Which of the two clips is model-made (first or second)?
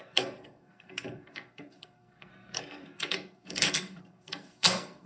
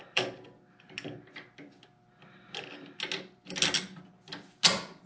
first